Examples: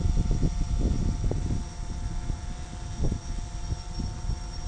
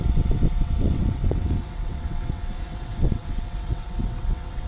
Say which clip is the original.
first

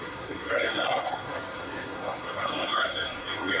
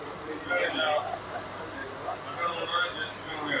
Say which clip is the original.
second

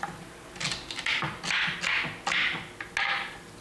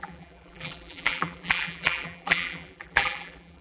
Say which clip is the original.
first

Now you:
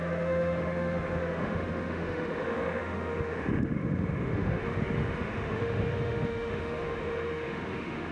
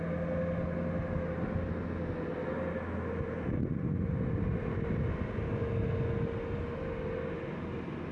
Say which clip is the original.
second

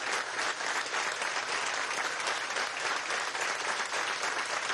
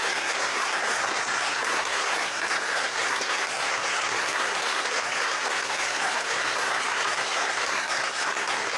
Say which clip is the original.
first